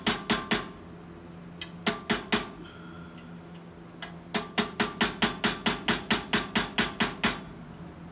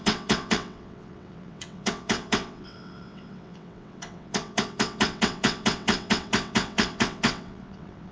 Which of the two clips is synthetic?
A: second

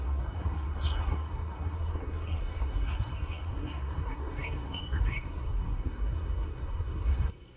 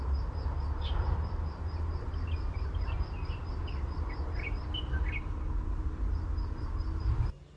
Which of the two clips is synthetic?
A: first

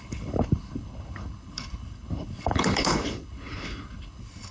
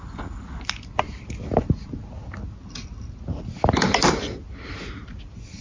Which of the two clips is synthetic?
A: first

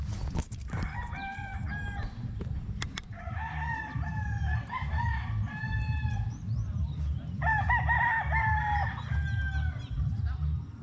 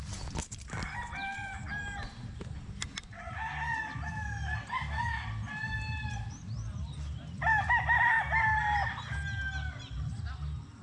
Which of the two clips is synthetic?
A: first